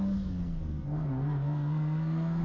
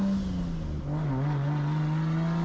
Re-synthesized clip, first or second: first